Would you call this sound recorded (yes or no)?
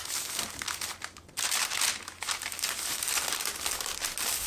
yes